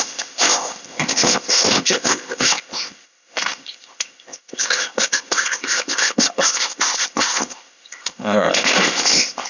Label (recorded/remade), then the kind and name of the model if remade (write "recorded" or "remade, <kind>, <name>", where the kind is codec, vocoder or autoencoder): remade, codec, ZipCodec